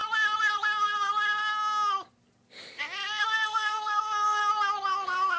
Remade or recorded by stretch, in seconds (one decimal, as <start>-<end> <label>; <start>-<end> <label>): 0.0-3.2 recorded; 3.2-4.4 remade; 4.4-5.4 recorded